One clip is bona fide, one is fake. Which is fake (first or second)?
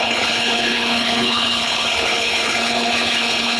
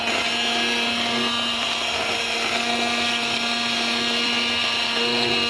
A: first